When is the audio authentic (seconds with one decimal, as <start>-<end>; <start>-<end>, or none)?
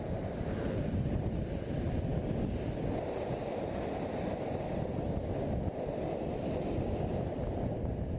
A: 0.0-8.2